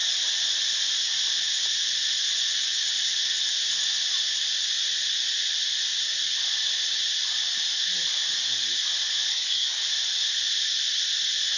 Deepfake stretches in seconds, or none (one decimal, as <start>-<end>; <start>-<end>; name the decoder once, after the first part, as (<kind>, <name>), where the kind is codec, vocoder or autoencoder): 9.3-9.8 (codec, SNAC)